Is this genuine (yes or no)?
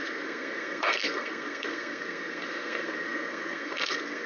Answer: no